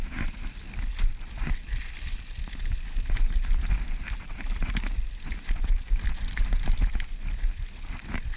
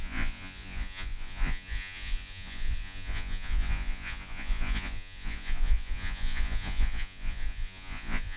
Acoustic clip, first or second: first